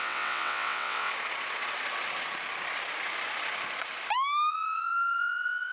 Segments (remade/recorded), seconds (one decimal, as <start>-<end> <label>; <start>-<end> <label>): 0.0-1.1 remade; 1.1-4.5 recorded; 4.5-5.7 remade